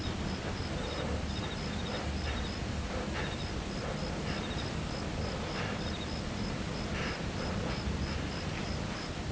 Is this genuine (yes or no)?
yes